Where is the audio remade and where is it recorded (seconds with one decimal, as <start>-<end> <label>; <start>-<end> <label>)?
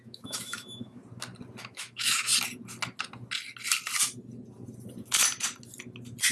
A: 0.0-1.0 remade; 1.0-1.6 recorded; 1.6-2.3 remade; 2.3-6.3 recorded